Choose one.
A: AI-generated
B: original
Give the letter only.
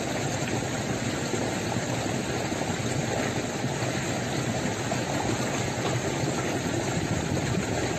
A